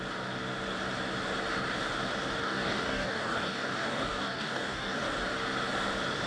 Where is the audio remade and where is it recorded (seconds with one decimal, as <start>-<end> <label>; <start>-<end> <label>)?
0.0-2.4 recorded; 2.4-5.0 remade; 5.0-6.3 recorded